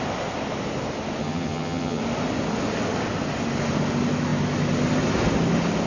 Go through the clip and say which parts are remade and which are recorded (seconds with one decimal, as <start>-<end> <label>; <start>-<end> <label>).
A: 0.0-1.2 recorded; 1.2-2.0 remade; 2.0-5.9 recorded